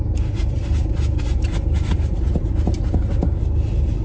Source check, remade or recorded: remade